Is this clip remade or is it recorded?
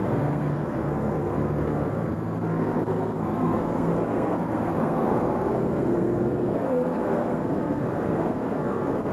remade